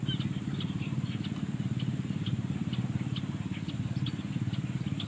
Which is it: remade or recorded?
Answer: recorded